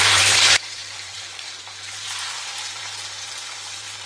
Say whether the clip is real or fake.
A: fake